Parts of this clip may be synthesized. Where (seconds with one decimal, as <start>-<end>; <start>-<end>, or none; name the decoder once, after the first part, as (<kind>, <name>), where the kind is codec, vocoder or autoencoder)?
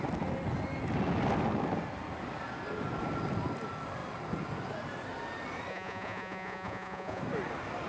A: 5.7-7.2 (vocoder, Vocos)